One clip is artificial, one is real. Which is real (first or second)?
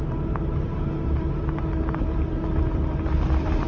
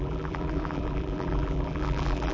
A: first